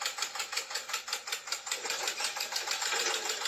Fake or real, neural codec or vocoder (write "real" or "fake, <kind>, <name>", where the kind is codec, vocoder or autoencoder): fake, vocoder, BigVGAN v2